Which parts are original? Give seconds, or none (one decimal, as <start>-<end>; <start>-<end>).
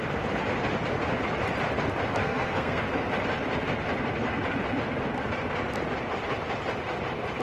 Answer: 0.0-2.2; 3.1-7.4